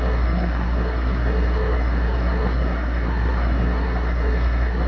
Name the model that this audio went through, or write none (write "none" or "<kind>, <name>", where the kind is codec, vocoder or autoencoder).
codec, SNAC